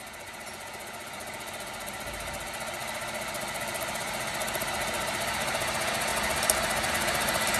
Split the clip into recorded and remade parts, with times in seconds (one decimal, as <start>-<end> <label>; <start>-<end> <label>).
0.0-7.6 recorded